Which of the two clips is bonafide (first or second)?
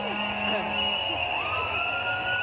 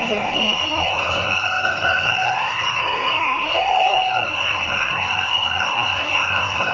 first